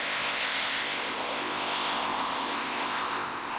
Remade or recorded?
remade